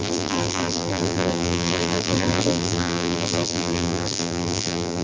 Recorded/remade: remade